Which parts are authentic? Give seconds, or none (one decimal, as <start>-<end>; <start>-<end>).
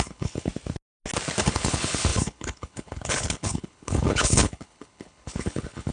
0.5-1.4